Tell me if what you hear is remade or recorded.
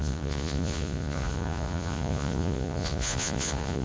remade